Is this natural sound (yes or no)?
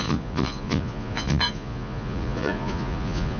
no